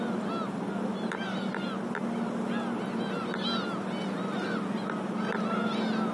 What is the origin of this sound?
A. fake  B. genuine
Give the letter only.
B